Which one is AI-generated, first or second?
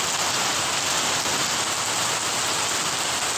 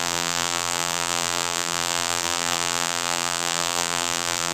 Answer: second